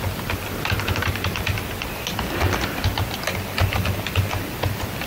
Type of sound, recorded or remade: recorded